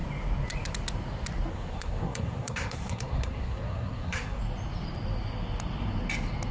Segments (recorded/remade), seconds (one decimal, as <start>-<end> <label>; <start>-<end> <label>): 0.0-1.5 recorded; 1.5-4.4 remade; 4.4-6.5 recorded